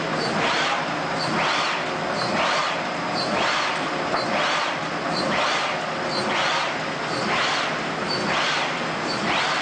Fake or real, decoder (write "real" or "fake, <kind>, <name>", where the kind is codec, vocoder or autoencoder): real